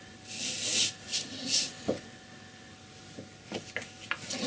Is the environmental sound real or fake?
real